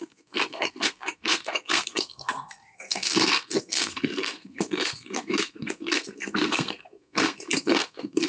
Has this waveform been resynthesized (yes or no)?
yes